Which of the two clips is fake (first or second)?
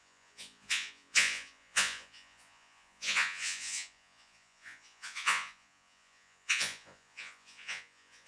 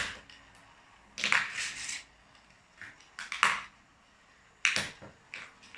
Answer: first